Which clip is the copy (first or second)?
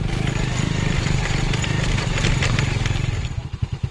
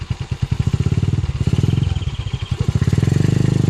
first